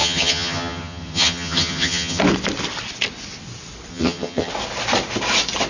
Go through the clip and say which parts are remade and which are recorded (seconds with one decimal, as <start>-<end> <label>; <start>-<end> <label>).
0.0-2.2 remade; 2.2-3.9 recorded; 3.9-4.5 remade; 4.5-5.7 recorded